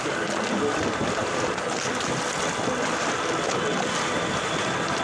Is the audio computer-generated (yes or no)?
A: no